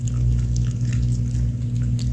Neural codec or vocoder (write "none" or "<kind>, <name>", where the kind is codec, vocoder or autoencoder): none